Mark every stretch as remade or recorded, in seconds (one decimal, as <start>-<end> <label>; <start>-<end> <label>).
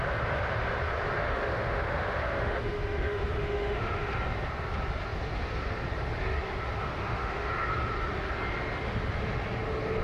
0.0-1.2 recorded; 1.2-4.1 remade; 4.1-7.0 recorded; 7.0-7.5 remade; 7.5-10.0 recorded